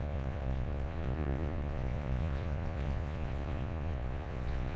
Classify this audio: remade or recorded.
remade